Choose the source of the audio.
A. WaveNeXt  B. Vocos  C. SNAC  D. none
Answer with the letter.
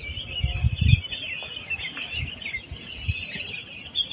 D